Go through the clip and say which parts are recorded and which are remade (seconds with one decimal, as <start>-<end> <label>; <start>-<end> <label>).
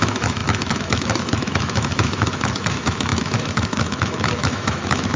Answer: 0.0-5.2 remade